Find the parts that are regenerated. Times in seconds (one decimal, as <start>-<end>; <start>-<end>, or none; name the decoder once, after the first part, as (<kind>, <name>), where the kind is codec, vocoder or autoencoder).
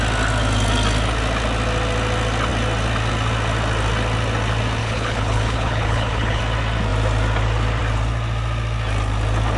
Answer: 4.8-6.4 (codec, HILCodec)